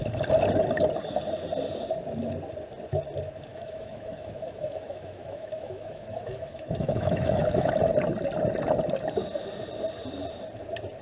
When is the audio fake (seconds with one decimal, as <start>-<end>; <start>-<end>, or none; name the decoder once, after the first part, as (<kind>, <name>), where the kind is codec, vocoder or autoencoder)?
3.5-7.7 (autoencoder, DAC-VAE)